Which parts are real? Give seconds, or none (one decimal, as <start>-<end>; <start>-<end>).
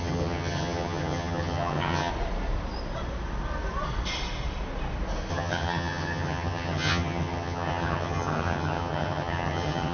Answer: 2.1-5.3